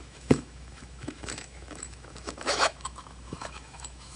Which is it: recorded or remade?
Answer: remade